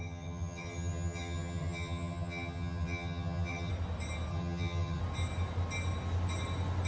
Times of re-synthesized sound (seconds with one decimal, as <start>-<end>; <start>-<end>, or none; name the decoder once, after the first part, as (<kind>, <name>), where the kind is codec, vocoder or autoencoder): 0.0-3.7 (vocoder, HiFi-GAN); 4.3-5.0